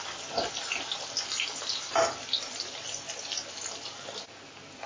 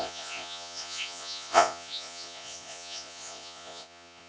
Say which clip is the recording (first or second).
first